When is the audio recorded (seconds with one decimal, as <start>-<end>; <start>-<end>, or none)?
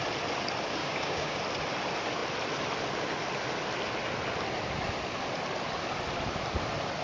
0.0-0.8; 1.4-7.0